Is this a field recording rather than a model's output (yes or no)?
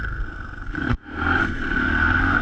no